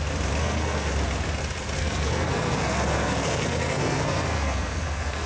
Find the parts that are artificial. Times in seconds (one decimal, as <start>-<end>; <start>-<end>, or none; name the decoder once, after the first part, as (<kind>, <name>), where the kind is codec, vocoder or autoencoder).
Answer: 0.4-0.9 (codec, SNAC); 1.8-5.3